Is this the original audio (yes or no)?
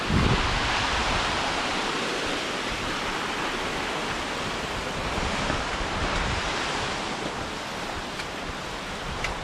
yes